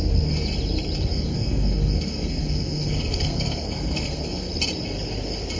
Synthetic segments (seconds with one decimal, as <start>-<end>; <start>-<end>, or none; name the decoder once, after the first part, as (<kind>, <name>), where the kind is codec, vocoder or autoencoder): 1.1-4.5 (codec, SNAC)